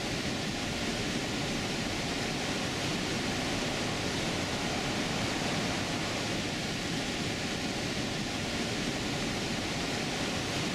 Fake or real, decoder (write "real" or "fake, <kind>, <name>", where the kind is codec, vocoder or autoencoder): real